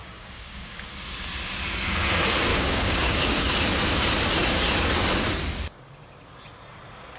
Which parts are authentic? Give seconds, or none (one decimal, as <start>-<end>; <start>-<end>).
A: 0.9-2.5; 3.4-7.2